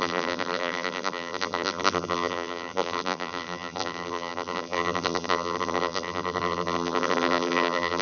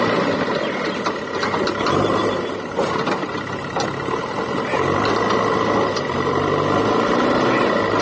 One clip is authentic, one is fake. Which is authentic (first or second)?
second